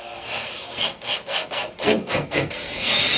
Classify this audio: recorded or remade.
remade